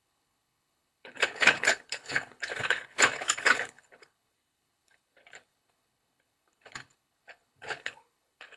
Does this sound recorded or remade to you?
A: remade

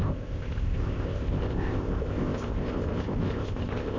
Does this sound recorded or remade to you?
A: remade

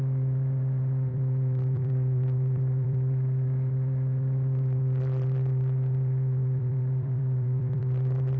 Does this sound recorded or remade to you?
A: remade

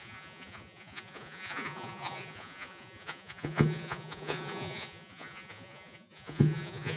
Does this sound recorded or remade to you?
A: remade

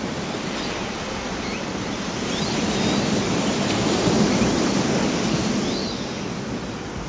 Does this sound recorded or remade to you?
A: recorded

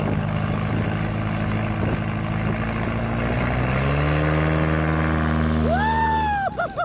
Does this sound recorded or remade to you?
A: recorded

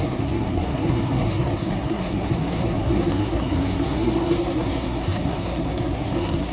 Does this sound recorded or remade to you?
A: remade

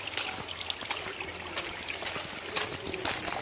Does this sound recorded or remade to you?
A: recorded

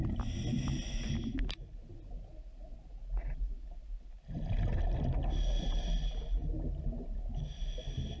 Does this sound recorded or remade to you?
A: recorded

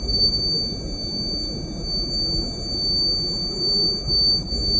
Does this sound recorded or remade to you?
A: recorded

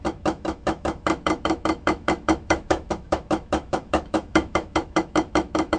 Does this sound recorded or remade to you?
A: remade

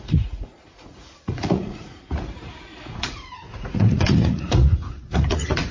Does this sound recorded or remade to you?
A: remade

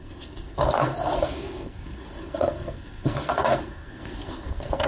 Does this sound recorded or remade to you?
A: remade